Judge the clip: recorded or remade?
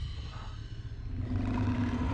recorded